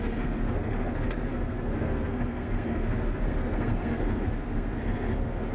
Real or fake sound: fake